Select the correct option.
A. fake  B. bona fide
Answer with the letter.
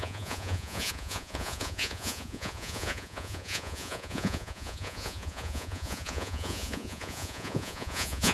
A